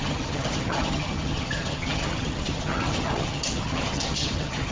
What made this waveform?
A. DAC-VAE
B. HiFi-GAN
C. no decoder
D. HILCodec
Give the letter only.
B